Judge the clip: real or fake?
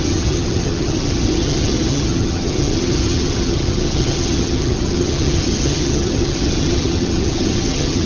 fake